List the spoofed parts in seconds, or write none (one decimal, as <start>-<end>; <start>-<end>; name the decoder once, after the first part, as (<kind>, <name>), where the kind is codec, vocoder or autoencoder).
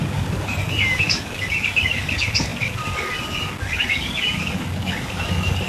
0.0-5.7 (codec, DAC)